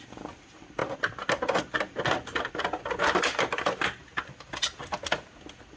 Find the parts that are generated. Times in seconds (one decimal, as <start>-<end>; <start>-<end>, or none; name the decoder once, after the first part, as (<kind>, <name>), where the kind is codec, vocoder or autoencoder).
4.0-4.8 (vocoder, BigVGAN v2)